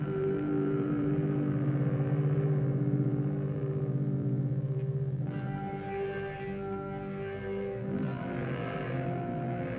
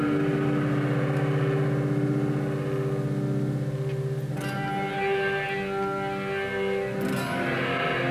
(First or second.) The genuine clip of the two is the second